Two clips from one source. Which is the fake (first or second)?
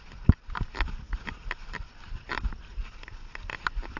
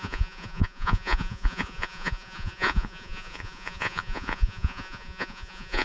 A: second